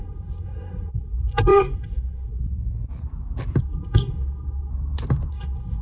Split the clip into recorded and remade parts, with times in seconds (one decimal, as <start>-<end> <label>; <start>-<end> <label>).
0.0-2.6 remade; 2.6-3.6 recorded; 3.6-4.7 remade; 4.7-5.3 recorded; 5.3-5.8 remade